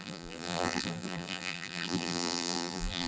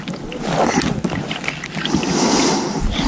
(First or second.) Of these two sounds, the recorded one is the second